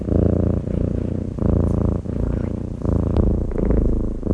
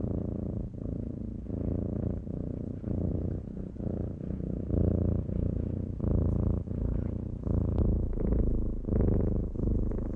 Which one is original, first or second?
first